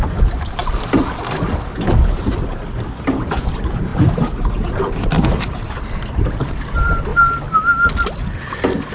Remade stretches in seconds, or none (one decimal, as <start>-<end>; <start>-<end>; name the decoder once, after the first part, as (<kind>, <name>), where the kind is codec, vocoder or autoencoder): 0.0-0.6 (vocoder, BigVGAN v2); 3.4-7.1